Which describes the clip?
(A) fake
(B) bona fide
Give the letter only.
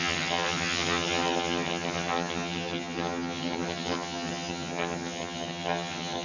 A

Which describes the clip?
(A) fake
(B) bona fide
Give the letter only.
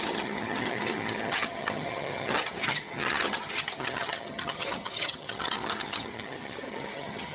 A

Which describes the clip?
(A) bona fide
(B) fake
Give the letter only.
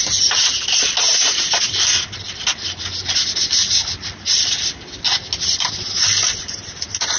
A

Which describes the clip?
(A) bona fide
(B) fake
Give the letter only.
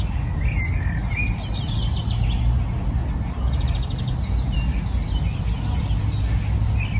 A